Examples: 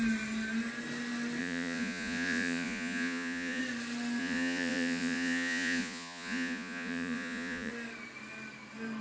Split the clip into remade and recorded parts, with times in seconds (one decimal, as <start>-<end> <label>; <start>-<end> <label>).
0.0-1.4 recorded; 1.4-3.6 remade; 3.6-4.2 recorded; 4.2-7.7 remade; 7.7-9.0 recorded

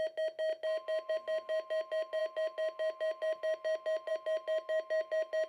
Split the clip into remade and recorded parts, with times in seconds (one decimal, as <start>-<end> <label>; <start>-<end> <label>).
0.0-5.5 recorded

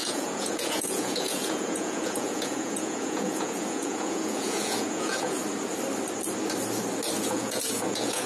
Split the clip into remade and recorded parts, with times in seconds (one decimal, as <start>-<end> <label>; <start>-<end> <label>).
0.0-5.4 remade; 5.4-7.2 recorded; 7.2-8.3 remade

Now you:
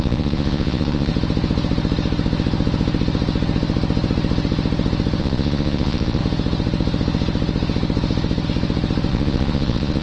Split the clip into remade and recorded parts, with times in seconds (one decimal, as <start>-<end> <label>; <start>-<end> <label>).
0.0-1.1 remade; 1.1-5.2 recorded; 5.2-6.2 remade; 6.2-9.1 recorded; 9.1-10.0 remade